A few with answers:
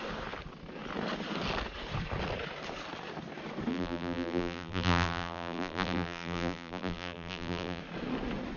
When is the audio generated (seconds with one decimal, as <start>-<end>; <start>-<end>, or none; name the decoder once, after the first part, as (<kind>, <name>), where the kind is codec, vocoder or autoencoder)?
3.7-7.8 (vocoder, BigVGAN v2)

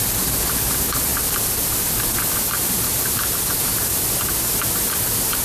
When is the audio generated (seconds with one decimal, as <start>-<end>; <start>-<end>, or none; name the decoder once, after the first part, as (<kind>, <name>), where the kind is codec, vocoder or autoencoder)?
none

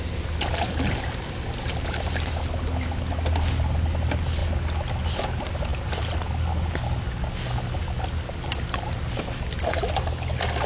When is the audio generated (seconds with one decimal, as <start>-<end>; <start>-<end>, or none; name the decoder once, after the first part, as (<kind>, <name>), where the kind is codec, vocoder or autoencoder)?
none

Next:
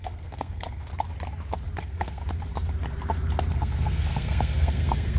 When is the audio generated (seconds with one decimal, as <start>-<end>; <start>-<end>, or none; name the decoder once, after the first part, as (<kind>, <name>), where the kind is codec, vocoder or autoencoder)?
0.0-0.9 (codec, SNAC); 1.8-2.2; 3.5-5.2

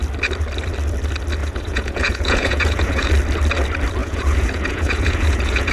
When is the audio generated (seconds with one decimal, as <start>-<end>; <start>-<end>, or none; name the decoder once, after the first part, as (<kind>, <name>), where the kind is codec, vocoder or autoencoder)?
1.4-3.1 (vocoder, Vocos); 4.0-5.7

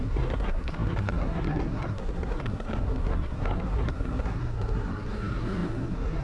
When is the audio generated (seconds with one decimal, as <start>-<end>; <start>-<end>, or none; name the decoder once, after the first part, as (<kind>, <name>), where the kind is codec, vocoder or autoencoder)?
0.0-6.2 (codec, SNAC)

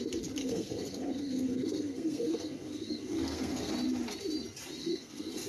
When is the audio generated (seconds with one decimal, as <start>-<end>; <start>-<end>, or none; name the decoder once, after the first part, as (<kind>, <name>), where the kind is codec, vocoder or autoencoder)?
0.4-3.7 (codec, SNAC); 4.8-5.5

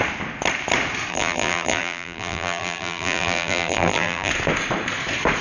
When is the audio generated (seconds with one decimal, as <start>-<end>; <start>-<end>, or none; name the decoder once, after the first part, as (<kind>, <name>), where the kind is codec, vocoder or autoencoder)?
1.1-4.3 (vocoder, BigVGAN v2)